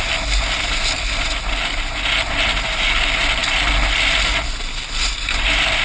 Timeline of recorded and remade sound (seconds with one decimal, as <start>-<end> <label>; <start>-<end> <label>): 0.0-5.8 recorded